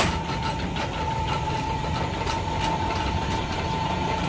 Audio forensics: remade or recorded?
recorded